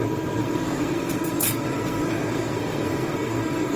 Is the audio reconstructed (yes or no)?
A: yes